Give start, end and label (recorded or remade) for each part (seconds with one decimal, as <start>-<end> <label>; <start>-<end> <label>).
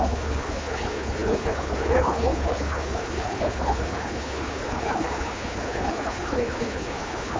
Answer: 0.0-7.4 remade